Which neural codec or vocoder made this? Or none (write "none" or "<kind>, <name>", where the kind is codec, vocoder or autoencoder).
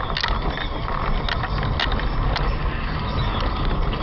none